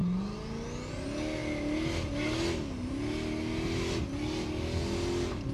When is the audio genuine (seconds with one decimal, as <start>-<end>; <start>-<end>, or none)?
0.0-5.5